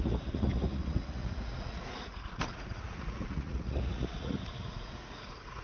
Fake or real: fake